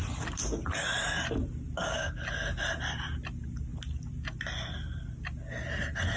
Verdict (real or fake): real